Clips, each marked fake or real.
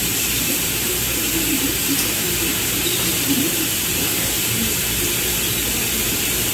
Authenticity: fake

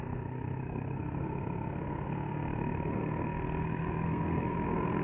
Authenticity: fake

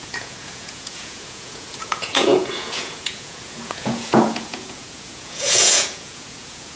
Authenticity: fake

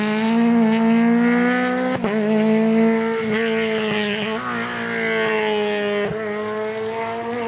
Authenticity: real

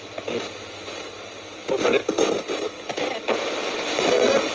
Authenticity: real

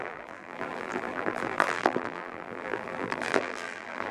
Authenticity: fake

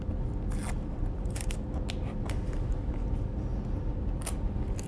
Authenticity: real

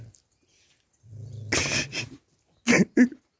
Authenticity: real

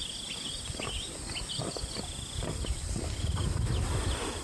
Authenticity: real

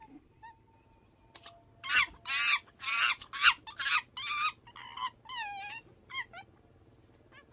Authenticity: real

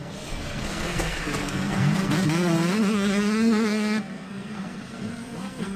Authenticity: fake